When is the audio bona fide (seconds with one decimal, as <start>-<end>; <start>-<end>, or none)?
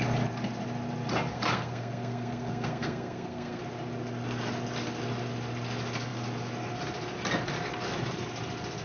0.0-1.3; 3.6-8.8